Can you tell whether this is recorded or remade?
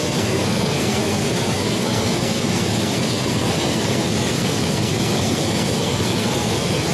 remade